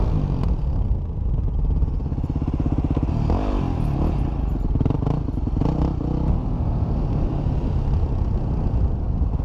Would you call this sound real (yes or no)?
yes